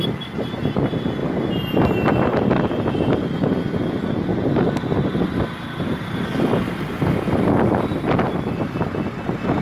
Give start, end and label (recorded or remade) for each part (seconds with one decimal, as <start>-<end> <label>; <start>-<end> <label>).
0.0-9.6 recorded